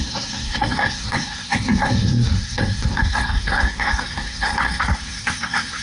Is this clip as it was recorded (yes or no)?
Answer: no